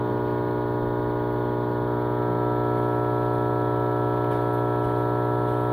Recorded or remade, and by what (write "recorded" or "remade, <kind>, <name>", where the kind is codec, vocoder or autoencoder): recorded